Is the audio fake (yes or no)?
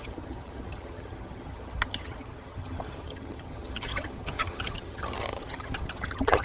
yes